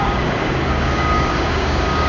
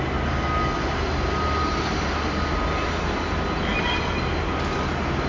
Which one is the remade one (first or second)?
first